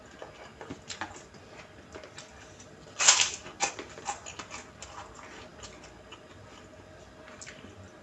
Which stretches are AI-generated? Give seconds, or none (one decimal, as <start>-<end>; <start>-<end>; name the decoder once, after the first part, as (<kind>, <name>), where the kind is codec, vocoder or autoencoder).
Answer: none

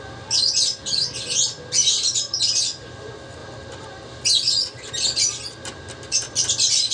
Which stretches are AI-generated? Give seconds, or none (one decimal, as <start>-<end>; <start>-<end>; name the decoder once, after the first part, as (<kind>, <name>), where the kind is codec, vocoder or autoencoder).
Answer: 1.8-2.4 (vocoder, BigVGAN v2); 3.4-4.9

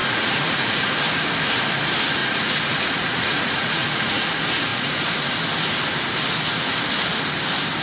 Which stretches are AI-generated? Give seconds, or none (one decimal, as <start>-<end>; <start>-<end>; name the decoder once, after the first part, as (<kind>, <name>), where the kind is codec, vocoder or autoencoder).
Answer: 0.0-0.9 (vocoder, Vocos); 2.2-4.3; 4.7-5.3

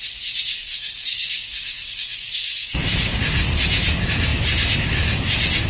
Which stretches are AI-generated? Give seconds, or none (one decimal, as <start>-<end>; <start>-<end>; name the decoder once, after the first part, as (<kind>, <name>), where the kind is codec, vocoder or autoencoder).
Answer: 0.6-3.2 (codec, DAC)

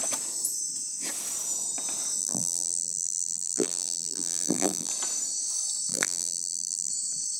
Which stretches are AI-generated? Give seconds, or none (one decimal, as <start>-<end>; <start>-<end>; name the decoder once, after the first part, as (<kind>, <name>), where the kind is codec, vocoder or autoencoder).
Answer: 2.2-4.9 (vocoder, BigVGAN v2); 5.9-6.9

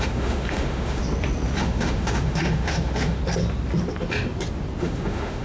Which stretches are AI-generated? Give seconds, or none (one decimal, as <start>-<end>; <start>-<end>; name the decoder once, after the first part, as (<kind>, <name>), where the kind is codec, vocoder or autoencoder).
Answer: 0.0-1.0 (autoencoder, DAC-VAE); 1.6-3.2; 4.8-5.4

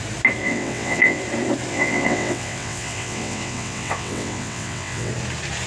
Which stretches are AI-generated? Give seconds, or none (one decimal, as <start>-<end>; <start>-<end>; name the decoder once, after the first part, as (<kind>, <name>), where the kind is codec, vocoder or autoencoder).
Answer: 0.4-1.2 (vocoder, WaveNeXt); 1.7-5.1

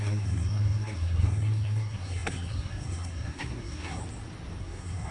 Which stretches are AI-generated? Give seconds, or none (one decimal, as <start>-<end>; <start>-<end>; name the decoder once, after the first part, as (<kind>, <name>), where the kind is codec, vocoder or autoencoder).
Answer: 0.0-4.0 (codec, SNAC); 4.6-5.1